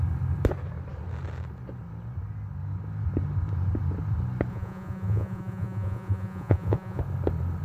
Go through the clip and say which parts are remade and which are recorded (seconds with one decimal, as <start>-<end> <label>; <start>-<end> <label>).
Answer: 0.0-4.5 recorded; 4.5-7.0 remade; 7.0-7.6 recorded